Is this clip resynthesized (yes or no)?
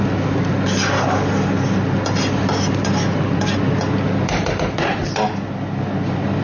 no